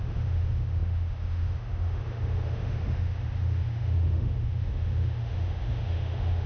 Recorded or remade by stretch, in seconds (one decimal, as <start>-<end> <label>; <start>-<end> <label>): 0.0-6.5 remade